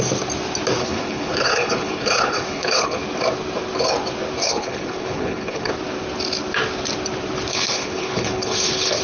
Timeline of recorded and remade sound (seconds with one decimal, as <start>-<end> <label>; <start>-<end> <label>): 0.0-0.8 recorded; 0.8-3.0 remade; 3.0-4.4 recorded; 4.4-5.7 remade; 5.7-7.5 recorded; 7.5-9.0 remade